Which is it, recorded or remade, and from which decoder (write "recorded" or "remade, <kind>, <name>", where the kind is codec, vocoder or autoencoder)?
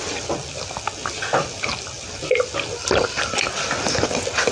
recorded